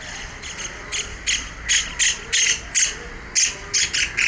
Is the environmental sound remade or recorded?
recorded